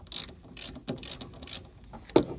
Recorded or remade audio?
recorded